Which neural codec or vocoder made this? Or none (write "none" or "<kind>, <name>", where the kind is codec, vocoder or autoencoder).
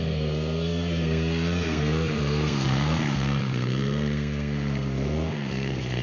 codec, SNAC